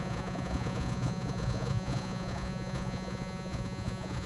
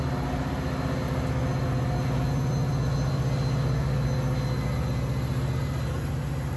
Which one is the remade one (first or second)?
first